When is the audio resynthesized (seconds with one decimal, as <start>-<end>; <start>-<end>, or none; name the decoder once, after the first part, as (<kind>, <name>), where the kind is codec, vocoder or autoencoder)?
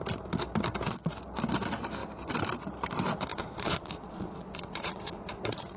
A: 3.3-5.8 (vocoder, Vocos)